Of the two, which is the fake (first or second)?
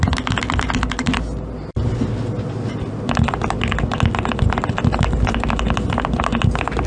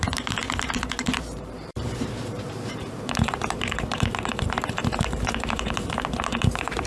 second